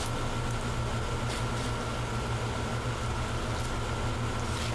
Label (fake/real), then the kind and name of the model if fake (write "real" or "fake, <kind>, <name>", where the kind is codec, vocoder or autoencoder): real